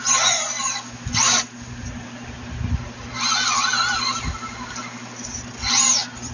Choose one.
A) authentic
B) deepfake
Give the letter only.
A